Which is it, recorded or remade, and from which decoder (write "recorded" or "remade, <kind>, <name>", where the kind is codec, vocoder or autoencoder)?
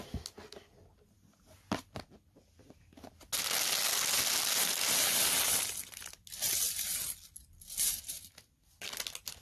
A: recorded